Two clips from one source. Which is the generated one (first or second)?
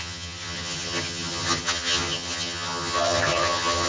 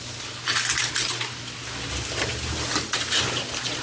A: first